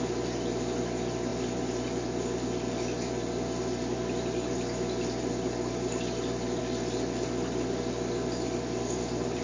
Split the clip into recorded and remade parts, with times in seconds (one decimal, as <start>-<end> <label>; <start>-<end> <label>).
0.0-9.4 recorded